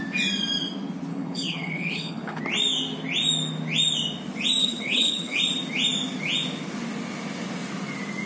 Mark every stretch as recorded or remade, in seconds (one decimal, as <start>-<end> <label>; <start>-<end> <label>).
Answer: 0.0-1.1 recorded; 1.1-2.4 remade; 2.4-4.6 recorded; 4.6-5.4 remade; 5.4-8.3 recorded